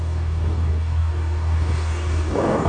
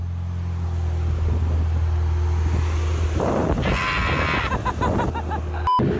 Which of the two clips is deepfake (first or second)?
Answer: first